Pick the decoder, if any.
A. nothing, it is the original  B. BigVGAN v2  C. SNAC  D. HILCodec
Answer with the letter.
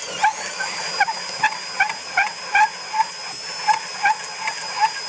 A